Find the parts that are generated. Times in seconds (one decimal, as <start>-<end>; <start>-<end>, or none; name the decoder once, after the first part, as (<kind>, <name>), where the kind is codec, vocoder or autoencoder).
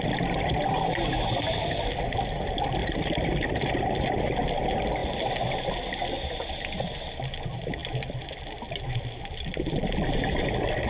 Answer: 2.8-3.7 (vocoder, BigVGAN v2); 7.8-10.4